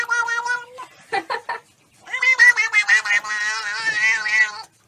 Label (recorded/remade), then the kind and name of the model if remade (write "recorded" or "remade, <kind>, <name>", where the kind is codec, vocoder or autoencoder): recorded